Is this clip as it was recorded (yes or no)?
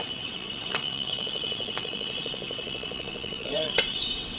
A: no